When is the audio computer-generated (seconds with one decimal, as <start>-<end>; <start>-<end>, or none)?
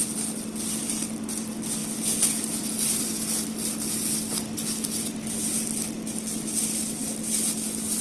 none